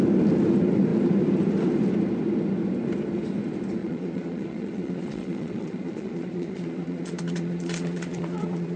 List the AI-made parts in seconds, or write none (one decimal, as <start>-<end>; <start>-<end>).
3.8-8.8